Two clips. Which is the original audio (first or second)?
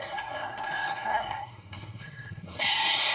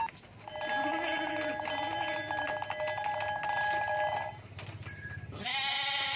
second